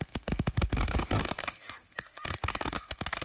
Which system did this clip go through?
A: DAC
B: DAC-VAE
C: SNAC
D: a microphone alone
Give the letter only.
C